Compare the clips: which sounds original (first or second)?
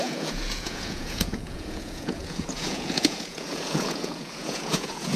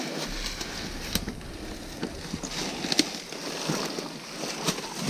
second